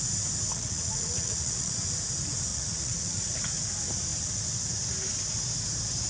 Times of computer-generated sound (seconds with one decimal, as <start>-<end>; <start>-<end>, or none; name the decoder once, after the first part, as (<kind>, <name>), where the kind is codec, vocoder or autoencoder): 0.5-1.7 (vocoder, Vocos); 2.5-3.2